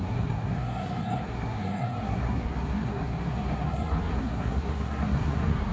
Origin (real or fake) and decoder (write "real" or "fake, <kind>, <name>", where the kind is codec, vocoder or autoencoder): fake, codec, SNAC